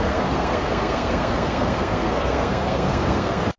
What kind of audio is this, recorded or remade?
remade